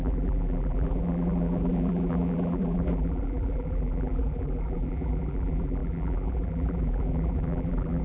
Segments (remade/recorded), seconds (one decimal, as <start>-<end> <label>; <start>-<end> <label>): 0.0-8.0 remade